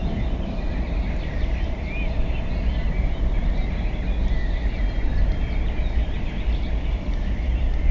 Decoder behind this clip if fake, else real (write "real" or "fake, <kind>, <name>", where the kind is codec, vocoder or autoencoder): real